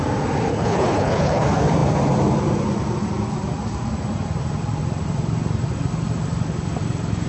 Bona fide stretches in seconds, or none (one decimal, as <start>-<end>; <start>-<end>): 0.0-0.5; 1.4-7.3